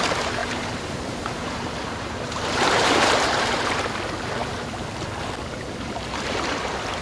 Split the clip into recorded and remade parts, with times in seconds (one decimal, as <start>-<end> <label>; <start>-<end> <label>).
0.0-0.4 recorded; 0.4-3.8 remade; 3.8-7.0 recorded